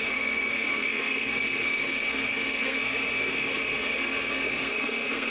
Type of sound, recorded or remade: remade